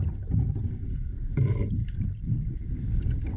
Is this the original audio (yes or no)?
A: yes